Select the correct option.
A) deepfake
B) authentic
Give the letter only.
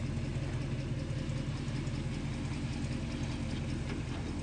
B